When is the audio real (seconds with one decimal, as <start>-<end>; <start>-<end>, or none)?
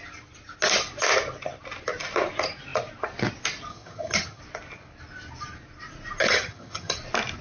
0.0-3.7; 4.4-6.2; 7.0-7.4